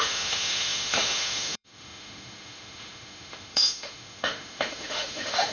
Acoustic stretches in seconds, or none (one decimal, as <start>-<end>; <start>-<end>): none